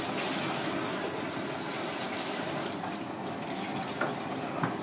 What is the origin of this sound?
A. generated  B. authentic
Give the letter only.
B